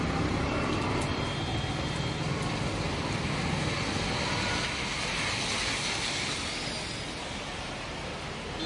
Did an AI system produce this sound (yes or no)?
no